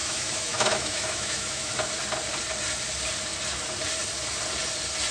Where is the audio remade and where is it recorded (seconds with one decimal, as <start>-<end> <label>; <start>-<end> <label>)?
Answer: 0.0-1.7 remade; 1.7-5.1 recorded